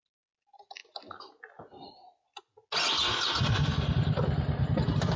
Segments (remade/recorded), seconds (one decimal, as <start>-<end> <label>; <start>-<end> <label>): 0.0-5.2 recorded

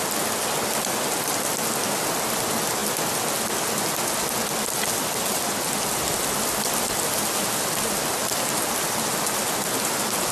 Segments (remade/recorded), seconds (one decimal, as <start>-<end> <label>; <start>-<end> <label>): 0.0-10.3 recorded

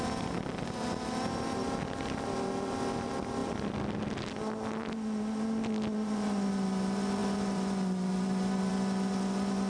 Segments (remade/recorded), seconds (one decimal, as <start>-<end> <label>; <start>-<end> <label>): 0.0-7.2 recorded; 7.2-8.7 remade; 8.7-9.7 recorded

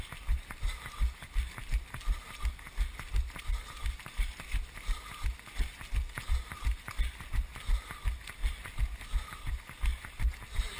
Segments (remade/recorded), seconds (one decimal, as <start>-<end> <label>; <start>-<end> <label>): 0.0-10.8 recorded

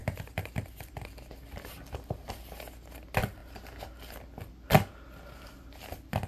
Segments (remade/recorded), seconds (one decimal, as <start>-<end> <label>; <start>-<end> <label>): 0.0-0.9 remade; 0.9-6.3 recorded

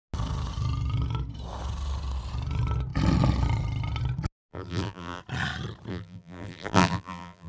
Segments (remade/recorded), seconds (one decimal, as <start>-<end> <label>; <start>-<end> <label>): 0.0-4.5 recorded; 4.5-5.2 remade; 5.2-5.9 recorded; 5.9-7.5 remade

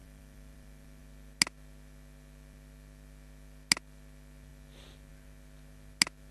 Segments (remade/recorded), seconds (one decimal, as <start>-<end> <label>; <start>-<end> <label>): 0.0-1.0 remade; 1.0-6.3 recorded